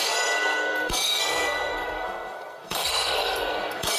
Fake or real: fake